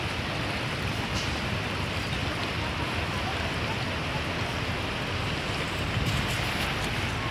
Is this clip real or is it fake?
real